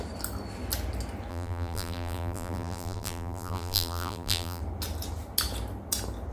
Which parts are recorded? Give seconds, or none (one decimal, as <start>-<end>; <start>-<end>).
0.0-1.3; 4.6-6.3